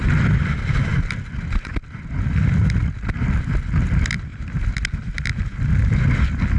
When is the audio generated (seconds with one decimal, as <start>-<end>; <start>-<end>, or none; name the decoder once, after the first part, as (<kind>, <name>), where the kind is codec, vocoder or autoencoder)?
none